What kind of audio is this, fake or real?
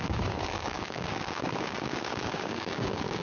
fake